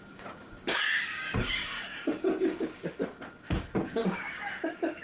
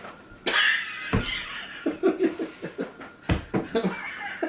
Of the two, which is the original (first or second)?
second